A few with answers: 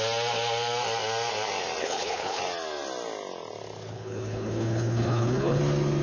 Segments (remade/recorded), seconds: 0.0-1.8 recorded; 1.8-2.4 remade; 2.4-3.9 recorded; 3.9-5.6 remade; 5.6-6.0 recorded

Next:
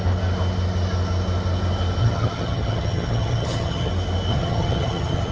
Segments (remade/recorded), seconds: 0.0-2.0 recorded; 2.0-3.9 remade; 3.9-4.3 recorded; 4.3-5.3 remade

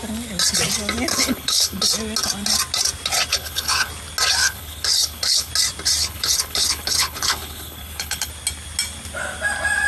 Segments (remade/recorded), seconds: 0.0-1.1 recorded; 1.1-1.8 remade; 1.8-3.3 recorded; 3.3-3.9 remade; 3.9-4.4 recorded; 4.4-5.5 remade; 5.5-6.0 recorded; 6.0-8.3 remade; 8.3-9.9 recorded

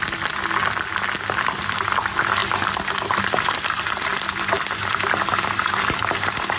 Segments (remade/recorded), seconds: 0.0-6.6 recorded

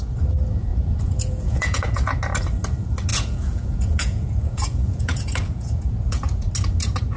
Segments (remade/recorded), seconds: 0.0-0.7 recorded; 0.7-2.1 remade; 2.1-3.1 recorded; 3.1-6.5 remade; 6.5-7.2 recorded